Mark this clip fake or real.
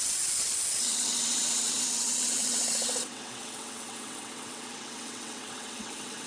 fake